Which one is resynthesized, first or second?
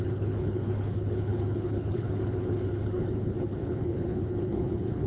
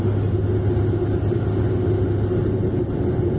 first